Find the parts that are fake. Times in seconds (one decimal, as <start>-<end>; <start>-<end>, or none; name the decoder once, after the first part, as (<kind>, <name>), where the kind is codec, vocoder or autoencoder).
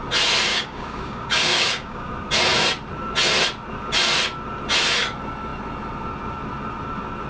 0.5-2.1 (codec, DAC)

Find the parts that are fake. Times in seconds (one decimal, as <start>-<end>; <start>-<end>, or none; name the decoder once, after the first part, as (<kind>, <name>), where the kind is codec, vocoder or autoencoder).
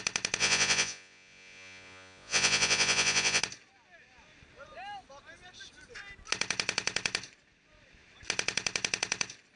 0.4-3.4 (vocoder, Vocos)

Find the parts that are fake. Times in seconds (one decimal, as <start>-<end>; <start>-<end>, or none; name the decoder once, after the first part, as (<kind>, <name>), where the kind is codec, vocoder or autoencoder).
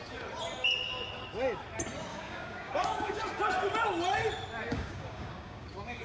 2.1-3.4 (codec, DAC); 4.7-6.0